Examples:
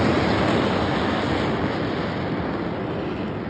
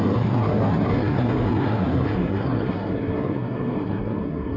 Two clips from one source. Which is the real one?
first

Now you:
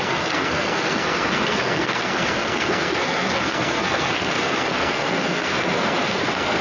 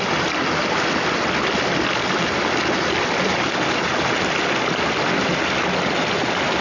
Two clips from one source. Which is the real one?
second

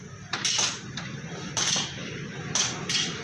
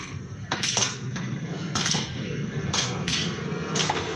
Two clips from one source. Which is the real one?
first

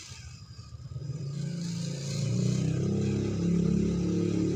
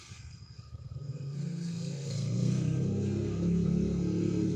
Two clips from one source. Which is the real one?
first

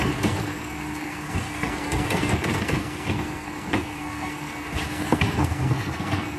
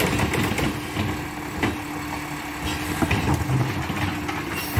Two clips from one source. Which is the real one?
second